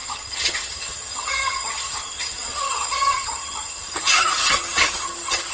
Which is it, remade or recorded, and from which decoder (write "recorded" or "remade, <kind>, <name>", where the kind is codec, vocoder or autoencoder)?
remade, vocoder, HiFi-GAN